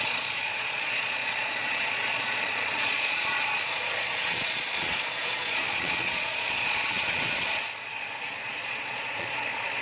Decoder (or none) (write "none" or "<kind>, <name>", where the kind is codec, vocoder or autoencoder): vocoder, Vocos